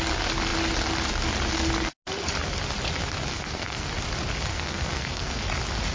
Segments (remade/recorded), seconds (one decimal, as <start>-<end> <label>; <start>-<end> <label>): 0.0-3.3 recorded; 3.3-3.9 remade; 3.9-4.5 recorded; 4.5-5.4 remade; 5.4-5.9 recorded